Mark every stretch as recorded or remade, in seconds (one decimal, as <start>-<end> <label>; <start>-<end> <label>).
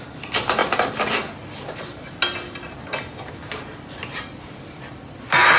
0.0-5.6 recorded